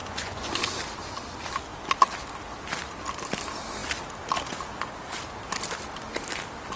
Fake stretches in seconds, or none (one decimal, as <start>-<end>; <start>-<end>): 0.0-0.6